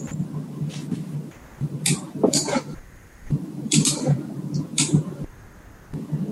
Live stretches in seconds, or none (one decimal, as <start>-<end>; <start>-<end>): 0.0-1.5; 5.3-6.3